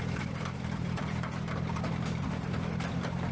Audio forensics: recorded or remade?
remade